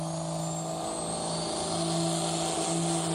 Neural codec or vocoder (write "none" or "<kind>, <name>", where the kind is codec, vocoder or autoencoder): none